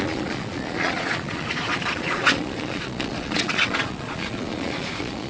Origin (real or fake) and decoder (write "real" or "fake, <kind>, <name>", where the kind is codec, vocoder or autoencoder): fake, vocoder, Vocos